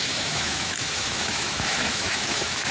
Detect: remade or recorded remade